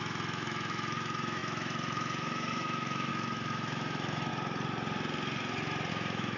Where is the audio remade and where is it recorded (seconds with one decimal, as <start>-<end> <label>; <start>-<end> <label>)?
0.0-4.3 remade; 4.3-5.9 recorded; 5.9-6.4 remade

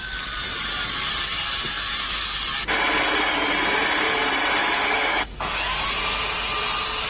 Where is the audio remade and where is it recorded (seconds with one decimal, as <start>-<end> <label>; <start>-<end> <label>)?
0.0-4.6 recorded; 4.6-5.4 remade; 5.4-7.1 recorded

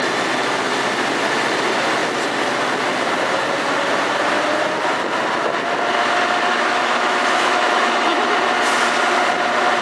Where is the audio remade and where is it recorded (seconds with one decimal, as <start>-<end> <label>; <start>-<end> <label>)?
0.0-6.5 recorded; 6.5-8.2 remade; 8.2-9.8 recorded